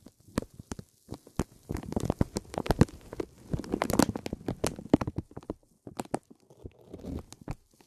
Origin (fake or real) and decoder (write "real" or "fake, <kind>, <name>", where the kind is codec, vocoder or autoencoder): real